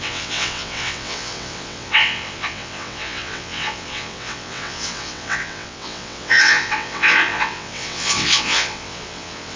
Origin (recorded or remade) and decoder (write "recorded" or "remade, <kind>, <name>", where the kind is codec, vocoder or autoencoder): remade, vocoder, WaveNeXt